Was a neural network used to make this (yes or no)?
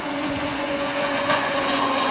yes